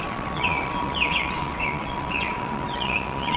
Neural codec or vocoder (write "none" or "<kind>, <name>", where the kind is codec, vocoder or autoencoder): vocoder, WaveNeXt